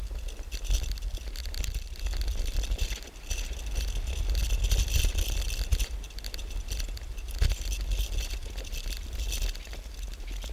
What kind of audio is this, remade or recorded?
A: recorded